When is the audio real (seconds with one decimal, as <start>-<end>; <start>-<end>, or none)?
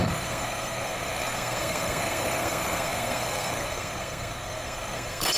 none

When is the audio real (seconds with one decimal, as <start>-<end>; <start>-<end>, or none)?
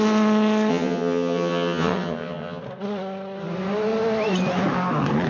0.0-0.7; 2.6-5.3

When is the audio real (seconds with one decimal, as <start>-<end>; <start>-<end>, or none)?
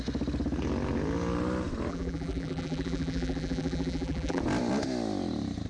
0.0-1.9; 4.4-5.7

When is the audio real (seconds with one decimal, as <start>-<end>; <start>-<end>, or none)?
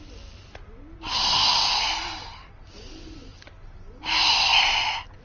0.0-5.2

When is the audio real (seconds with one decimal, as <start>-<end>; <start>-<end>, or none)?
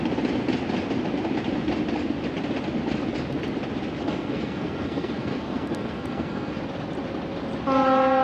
0.0-4.0; 6.6-8.2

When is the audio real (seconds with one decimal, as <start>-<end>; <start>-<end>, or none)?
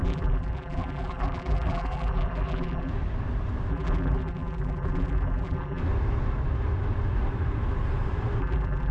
2.9-3.7; 5.8-8.4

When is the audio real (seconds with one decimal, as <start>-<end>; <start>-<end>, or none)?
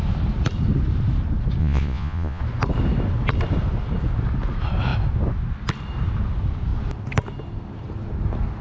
0.0-1.6; 2.4-8.6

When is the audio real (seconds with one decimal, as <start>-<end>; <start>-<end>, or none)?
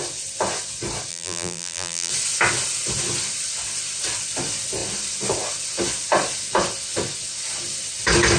0.0-1.1; 2.1-8.4